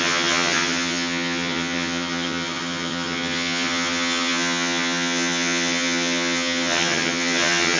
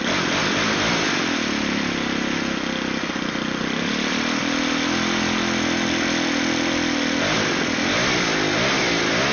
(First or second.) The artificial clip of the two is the first